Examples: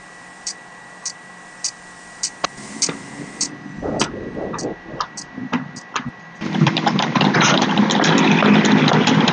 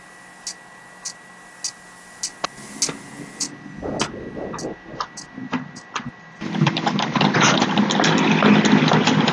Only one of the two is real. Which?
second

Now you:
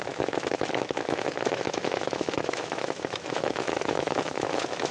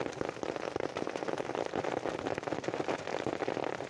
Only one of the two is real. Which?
second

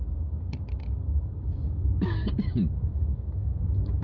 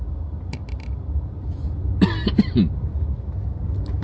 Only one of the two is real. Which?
second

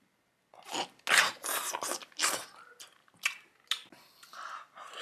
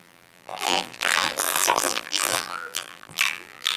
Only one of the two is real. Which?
first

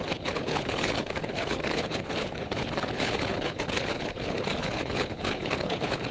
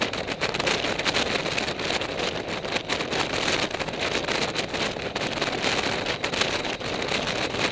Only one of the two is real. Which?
second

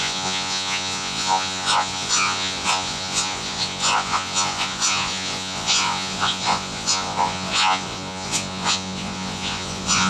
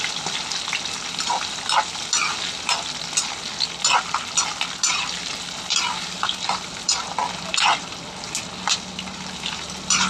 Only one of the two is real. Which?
second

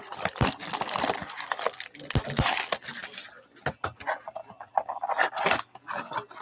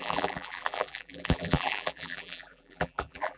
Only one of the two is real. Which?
first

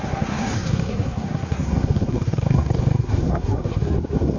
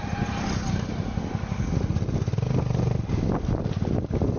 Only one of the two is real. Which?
second